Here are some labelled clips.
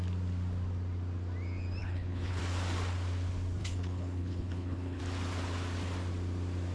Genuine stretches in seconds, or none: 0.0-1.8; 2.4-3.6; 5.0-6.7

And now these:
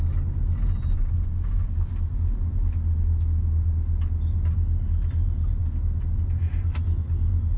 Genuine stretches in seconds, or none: 0.0-7.6

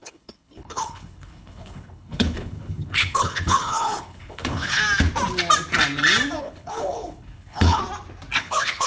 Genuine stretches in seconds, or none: 4.8-6.4; 7.8-8.4

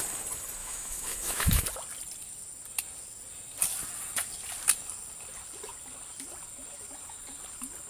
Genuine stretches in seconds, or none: 0.0-0.6; 1.6-7.9

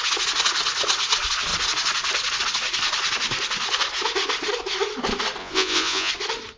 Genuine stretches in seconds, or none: 0.0-5.4; 6.1-6.6

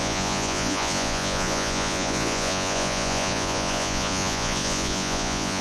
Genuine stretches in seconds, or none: none

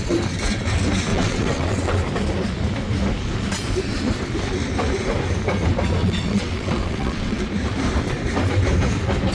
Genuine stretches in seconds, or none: 0.0-1.1; 2.0-6.0; 7.4-9.3